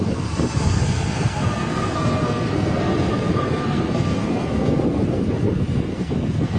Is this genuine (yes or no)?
no